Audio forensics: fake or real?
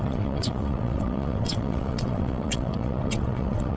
fake